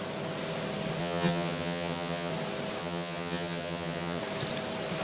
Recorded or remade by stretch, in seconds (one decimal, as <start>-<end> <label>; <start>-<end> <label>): 0.0-1.0 recorded; 1.0-2.3 remade; 2.3-2.8 recorded; 2.8-4.2 remade; 4.2-5.0 recorded